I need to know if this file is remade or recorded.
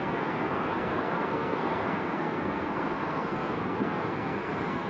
remade